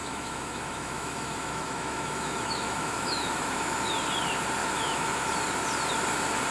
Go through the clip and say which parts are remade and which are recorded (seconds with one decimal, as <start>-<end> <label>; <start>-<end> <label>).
0.0-3.9 remade; 3.9-4.6 recorded; 4.6-5.3 remade; 5.3-6.5 recorded